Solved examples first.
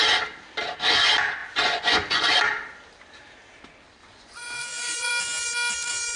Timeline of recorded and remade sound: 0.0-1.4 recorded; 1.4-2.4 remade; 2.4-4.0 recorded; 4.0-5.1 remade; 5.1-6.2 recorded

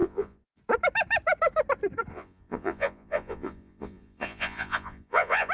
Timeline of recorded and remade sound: 0.0-0.6 remade; 0.6-2.1 recorded; 2.1-5.5 remade

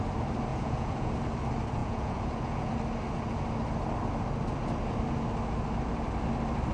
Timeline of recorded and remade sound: 0.0-0.5 recorded; 0.5-1.1 remade; 1.1-1.8 recorded; 1.8-2.7 remade; 2.7-6.7 recorded

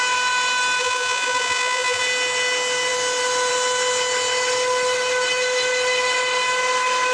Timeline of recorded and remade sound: 0.0-0.8 recorded; 0.8-2.0 remade; 2.0-7.1 recorded

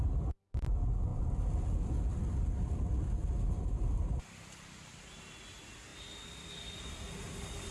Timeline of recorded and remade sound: 0.0-7.7 recorded

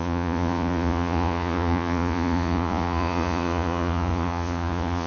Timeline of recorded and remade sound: 0.0-5.1 remade

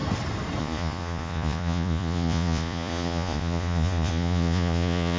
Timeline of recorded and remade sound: 0.0-0.6 recorded; 0.6-5.2 remade

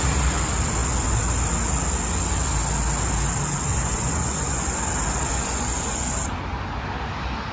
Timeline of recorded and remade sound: 0.0-3.7 recorded; 3.7-4.8 remade; 4.8-5.3 recorded; 5.3-6.1 remade; 6.1-7.5 recorded